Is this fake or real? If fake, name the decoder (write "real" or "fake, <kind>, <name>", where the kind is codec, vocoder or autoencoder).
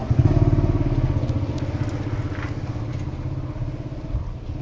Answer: real